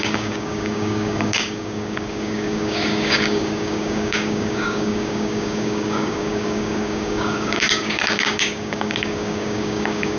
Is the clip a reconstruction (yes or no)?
yes